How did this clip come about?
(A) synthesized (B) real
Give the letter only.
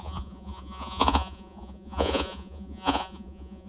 A